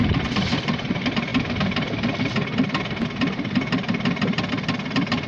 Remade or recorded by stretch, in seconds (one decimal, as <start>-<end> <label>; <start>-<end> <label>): 0.0-5.3 recorded